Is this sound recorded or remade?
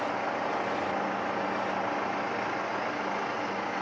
recorded